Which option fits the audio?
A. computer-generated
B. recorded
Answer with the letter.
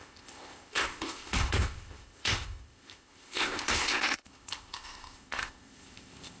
A